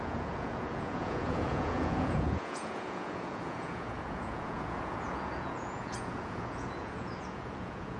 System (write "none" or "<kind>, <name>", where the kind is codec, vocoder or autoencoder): vocoder, Vocos